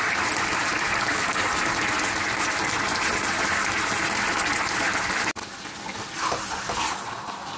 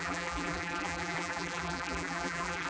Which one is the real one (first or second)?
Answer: first